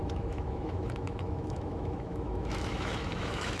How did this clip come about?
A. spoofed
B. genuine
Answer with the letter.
A